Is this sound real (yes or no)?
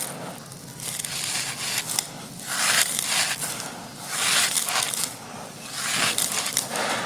yes